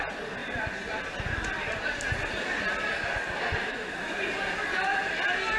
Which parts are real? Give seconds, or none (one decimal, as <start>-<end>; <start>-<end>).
0.0-3.6; 4.2-5.6